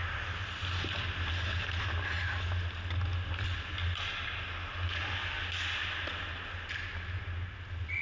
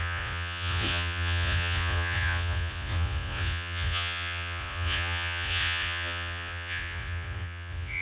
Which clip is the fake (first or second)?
second